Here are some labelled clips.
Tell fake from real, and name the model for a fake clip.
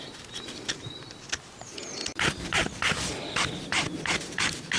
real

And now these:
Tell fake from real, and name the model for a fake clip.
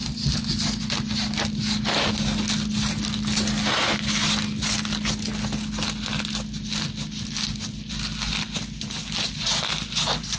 real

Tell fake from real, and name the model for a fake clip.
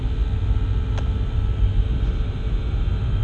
real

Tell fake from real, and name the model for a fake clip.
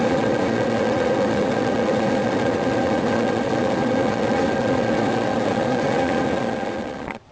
fake, vocoder, Vocos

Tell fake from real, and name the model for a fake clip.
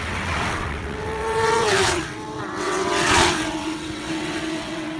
fake, vocoder, WaveNeXt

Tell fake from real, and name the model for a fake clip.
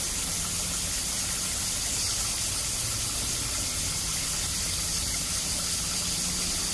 real